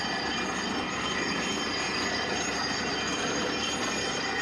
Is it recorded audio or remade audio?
recorded